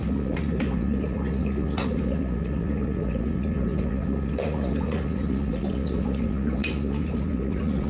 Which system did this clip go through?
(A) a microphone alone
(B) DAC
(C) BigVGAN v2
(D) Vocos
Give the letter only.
D